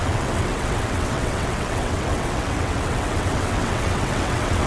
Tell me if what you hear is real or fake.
fake